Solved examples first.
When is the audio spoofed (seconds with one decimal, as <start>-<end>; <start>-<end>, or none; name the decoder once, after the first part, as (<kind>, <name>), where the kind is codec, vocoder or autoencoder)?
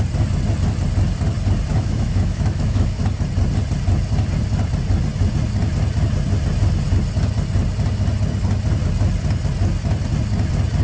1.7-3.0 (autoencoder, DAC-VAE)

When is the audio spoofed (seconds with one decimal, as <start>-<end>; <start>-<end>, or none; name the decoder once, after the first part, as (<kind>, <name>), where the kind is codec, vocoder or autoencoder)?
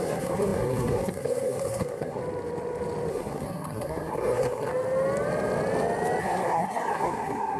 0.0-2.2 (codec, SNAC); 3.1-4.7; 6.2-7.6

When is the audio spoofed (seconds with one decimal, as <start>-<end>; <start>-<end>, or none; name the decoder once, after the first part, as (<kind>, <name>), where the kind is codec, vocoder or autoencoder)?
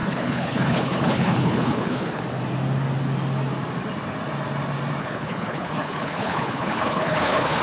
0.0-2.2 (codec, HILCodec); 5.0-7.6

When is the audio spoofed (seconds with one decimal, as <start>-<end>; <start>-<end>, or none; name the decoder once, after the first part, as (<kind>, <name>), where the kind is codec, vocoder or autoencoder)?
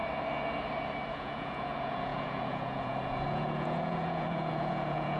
1.1-5.2 (vocoder, Vocos)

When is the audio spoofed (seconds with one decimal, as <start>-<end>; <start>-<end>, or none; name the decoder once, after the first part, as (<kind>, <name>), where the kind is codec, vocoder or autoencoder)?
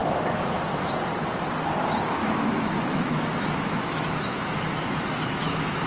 0.0-0.9 (autoencoder, DAC-VAE); 2.2-5.9